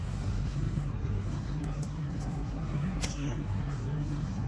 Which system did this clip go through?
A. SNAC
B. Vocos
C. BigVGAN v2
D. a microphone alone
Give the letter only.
A